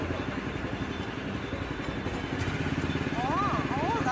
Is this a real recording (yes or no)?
yes